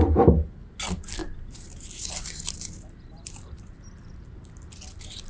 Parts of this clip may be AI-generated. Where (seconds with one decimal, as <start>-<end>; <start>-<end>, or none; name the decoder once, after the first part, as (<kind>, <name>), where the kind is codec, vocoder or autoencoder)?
1.2-3.6 (vocoder, BigVGAN v2)